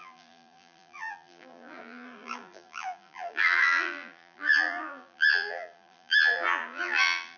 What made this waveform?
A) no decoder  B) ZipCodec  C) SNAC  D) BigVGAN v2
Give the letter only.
D